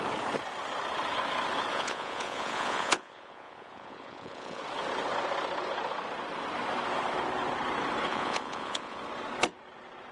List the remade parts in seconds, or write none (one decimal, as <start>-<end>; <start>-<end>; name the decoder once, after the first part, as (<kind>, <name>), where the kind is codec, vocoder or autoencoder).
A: 1.7-4.6 (vocoder, Vocos); 8.1-9.0